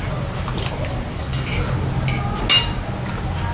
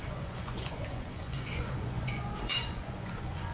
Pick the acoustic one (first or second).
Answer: first